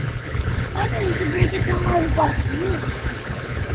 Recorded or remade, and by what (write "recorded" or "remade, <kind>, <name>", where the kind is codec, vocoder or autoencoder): remade, codec, HILCodec